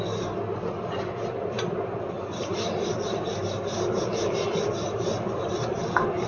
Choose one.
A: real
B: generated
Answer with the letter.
A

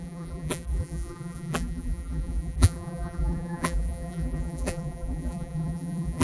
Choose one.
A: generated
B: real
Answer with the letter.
A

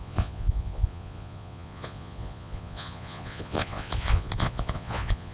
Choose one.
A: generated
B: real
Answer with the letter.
A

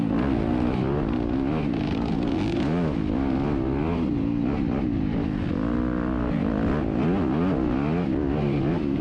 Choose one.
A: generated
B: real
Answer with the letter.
B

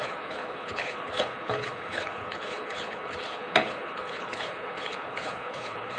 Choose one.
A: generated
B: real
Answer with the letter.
A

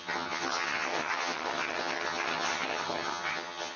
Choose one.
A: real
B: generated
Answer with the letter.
B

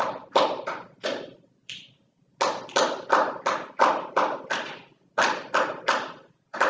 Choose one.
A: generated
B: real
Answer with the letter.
B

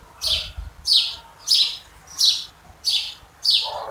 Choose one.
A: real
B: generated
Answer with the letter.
A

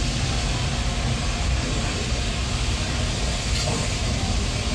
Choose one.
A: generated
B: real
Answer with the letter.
B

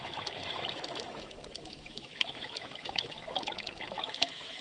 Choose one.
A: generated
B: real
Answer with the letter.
A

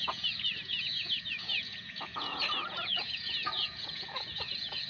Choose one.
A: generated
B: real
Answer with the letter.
A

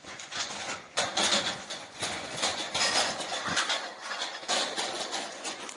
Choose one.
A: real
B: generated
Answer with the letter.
B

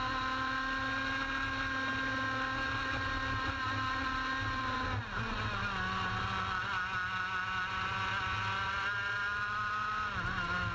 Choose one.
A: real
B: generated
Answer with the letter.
A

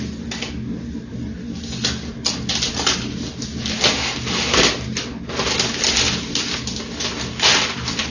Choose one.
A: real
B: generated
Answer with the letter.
A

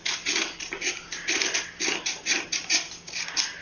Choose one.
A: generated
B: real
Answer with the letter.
A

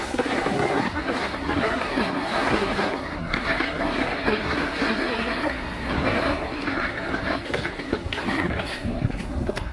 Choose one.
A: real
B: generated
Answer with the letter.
B